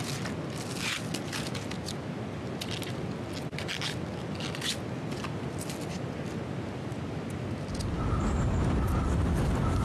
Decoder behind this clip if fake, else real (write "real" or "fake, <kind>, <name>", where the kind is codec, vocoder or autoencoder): real